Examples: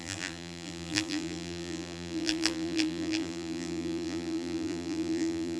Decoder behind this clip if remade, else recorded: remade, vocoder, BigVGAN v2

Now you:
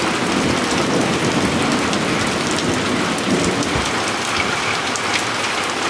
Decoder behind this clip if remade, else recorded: recorded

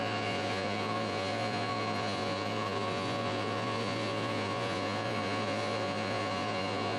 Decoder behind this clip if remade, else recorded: remade, vocoder, Vocos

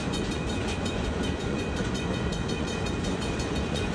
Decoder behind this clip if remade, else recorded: remade, vocoder, Vocos